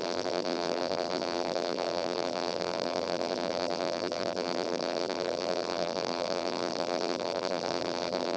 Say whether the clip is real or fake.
fake